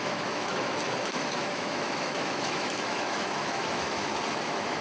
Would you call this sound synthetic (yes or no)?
yes